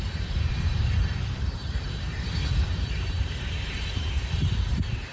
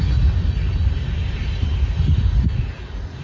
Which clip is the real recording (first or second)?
second